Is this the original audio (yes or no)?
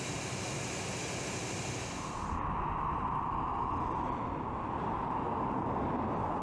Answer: yes